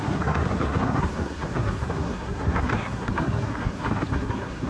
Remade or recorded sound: remade